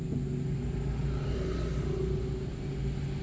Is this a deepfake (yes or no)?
no